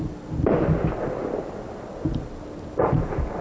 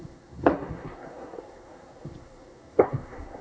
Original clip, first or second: first